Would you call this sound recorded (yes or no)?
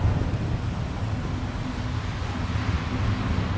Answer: yes